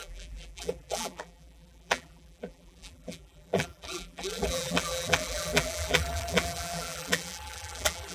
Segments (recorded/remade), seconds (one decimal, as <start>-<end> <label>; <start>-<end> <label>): 0.0-8.1 remade